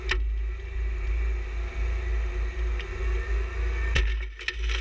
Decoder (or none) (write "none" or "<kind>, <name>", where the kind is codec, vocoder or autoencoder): none